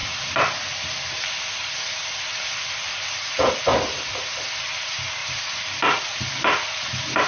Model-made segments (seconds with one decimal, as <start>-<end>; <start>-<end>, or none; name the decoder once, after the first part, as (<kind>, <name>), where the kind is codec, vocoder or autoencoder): 0.0-3.5 (vocoder, BigVGAN v2); 5.2-6.2